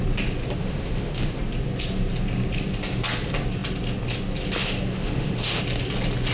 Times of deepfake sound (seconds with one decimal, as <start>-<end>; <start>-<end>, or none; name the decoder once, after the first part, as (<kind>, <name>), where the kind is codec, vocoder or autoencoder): 0.6-1.4 (autoencoder, DAC-VAE); 4.9-5.6